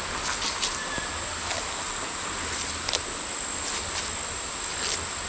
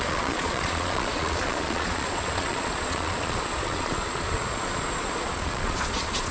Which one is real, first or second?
first